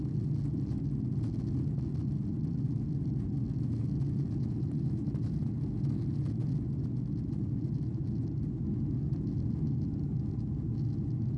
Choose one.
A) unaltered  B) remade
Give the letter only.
A